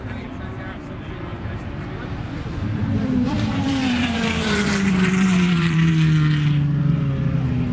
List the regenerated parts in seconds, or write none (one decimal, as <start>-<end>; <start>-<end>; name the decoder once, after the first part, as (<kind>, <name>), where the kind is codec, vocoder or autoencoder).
1.3-5.9 (vocoder, BigVGAN v2)